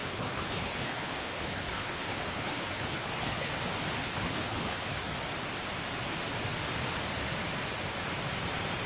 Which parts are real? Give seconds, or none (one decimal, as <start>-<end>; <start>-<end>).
3.5-4.0; 5.0-8.9